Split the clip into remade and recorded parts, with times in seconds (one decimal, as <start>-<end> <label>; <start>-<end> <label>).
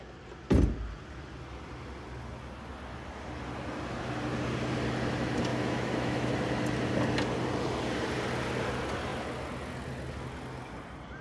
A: 0.0-5.5 recorded; 5.5-6.3 remade; 6.3-11.2 recorded